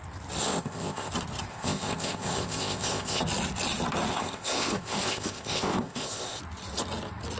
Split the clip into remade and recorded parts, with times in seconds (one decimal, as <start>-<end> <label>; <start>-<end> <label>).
0.0-0.4 recorded; 0.4-1.1 remade; 1.1-1.5 recorded; 1.5-3.2 remade; 3.2-4.1 recorded; 4.1-6.4 remade; 6.4-7.4 recorded